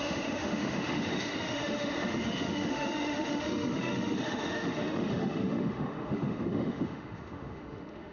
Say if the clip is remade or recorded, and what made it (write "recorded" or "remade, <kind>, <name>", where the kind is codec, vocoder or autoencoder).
remade, autoencoder, DAC-VAE